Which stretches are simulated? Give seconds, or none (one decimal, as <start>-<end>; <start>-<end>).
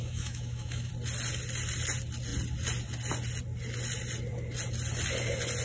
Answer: 0.0-0.9